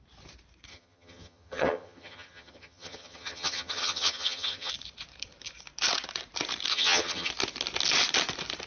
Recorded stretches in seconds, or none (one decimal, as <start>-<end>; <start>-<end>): 0.0-0.7; 4.7-6.7; 7.3-8.7